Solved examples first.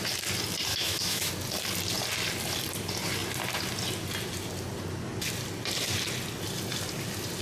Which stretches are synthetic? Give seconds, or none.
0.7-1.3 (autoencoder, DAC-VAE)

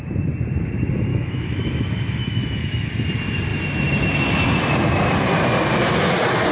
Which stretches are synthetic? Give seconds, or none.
1.1-2.9 (autoencoder, DAC-VAE)